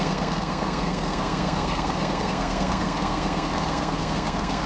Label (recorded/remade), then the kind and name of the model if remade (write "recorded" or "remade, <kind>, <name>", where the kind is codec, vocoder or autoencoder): remade, codec, SNAC